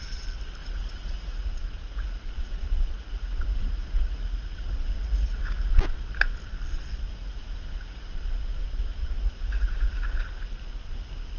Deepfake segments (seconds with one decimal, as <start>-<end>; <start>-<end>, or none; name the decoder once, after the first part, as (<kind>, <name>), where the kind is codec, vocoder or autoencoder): 0.6-5.7 (vocoder, Vocos); 7.1-8.1; 8.8-10.3